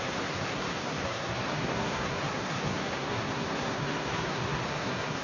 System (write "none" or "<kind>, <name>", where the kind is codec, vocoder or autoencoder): codec, SNAC